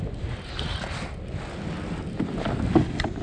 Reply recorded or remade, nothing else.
recorded